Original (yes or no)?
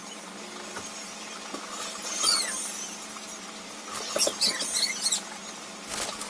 yes